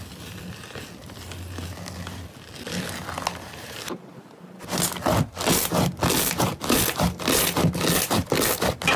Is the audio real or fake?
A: real